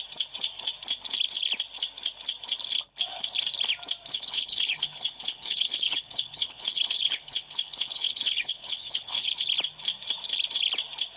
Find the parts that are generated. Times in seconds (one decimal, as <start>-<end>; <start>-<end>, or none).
4.1-9.3